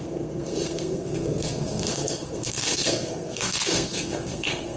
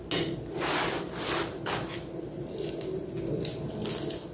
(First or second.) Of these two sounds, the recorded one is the second